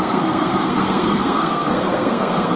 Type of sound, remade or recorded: remade